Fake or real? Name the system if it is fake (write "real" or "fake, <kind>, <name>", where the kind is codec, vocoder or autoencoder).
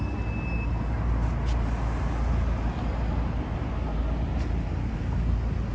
real